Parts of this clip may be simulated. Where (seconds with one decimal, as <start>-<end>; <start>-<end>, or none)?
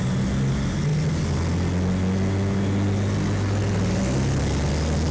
none